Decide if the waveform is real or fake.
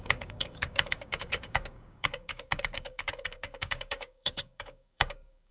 fake